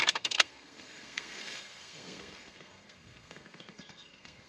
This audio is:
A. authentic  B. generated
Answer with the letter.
B